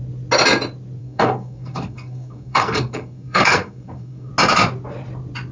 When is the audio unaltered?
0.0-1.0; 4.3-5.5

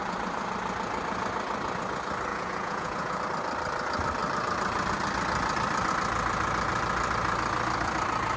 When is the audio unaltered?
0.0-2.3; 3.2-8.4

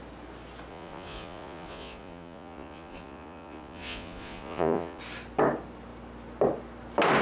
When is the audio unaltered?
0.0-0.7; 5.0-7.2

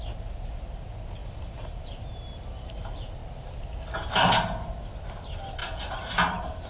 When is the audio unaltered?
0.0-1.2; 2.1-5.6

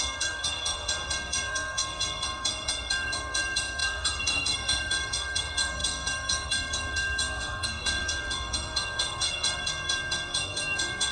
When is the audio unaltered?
none

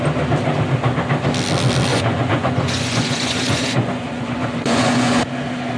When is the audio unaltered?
0.0-1.9; 5.2-5.8

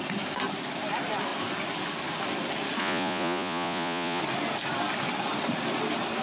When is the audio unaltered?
0.0-2.8; 4.2-6.2